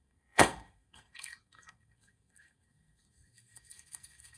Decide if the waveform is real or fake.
fake